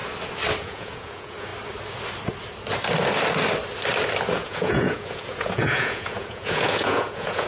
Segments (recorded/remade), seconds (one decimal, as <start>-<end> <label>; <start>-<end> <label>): 0.0-0.6 recorded; 0.6-1.5 remade; 1.5-4.3 recorded; 4.3-7.5 remade